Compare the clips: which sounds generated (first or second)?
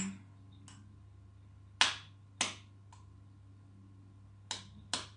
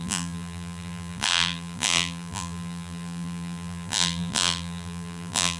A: second